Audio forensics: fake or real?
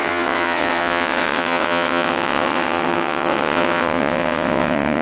fake